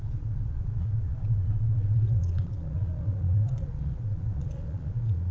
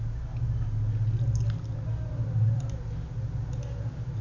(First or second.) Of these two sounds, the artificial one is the first